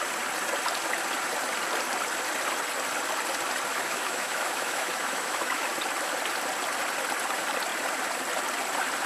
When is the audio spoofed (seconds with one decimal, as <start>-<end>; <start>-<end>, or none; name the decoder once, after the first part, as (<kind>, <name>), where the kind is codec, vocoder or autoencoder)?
3.7-5.7 (autoencoder, DAC-VAE)